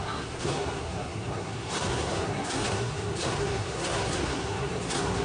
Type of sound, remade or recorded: remade